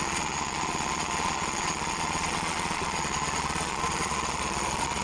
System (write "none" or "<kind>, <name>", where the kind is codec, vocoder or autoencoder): vocoder, Vocos